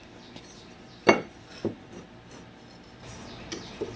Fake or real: fake